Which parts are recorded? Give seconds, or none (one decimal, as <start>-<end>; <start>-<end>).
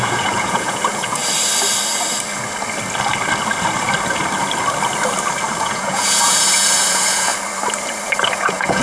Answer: 1.2-5.6; 7.3-8.3